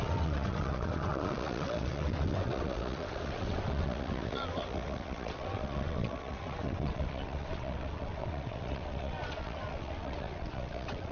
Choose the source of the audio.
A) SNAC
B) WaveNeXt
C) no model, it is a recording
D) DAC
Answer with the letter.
B